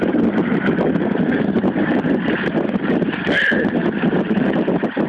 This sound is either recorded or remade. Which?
remade